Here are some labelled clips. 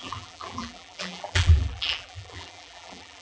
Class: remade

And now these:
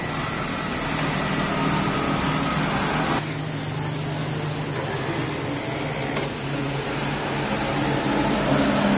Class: recorded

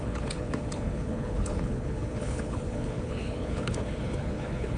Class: remade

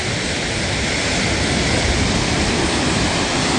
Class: recorded